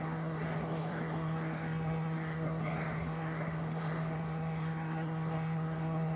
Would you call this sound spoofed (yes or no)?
yes